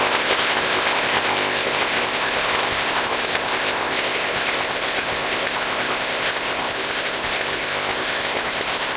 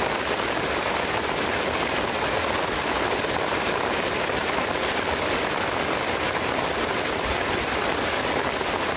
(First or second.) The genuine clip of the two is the second